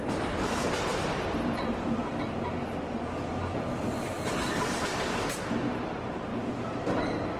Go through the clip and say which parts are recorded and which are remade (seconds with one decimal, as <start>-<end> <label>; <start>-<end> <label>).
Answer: 0.0-7.4 remade